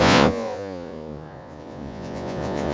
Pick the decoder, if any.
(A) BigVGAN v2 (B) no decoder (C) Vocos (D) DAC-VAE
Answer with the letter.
C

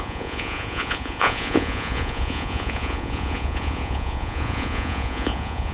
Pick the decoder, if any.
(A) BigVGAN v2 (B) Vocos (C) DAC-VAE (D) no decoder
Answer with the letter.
B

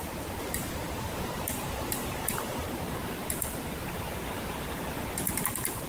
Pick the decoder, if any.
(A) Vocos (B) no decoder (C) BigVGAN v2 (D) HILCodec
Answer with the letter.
C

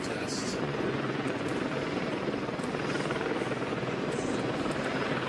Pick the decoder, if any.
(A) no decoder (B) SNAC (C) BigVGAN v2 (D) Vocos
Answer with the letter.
D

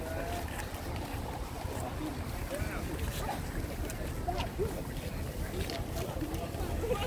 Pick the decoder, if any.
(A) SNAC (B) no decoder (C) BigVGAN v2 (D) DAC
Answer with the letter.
B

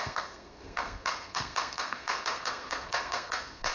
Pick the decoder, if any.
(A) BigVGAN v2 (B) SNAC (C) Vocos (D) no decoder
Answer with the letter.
B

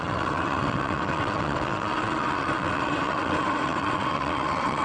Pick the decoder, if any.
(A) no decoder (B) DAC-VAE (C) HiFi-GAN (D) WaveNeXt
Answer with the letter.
D